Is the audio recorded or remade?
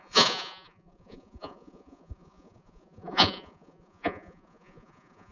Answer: remade